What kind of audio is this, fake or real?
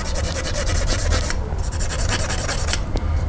real